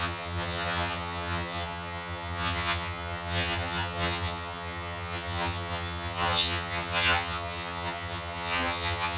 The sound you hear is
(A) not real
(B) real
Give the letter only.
A